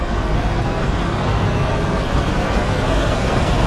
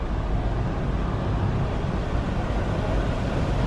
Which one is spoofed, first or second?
first